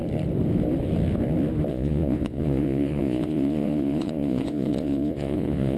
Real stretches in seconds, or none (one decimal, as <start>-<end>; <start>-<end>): 0.0-1.7